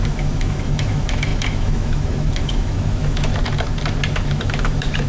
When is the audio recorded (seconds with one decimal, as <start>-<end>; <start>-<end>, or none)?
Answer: 3.3-4.1